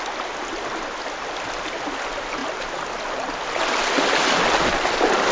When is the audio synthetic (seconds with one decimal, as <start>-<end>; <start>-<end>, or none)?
none